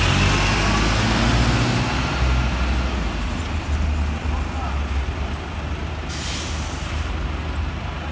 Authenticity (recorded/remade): recorded